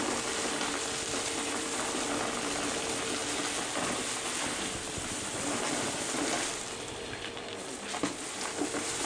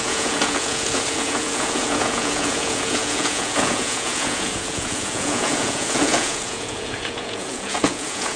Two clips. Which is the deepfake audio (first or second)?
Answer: second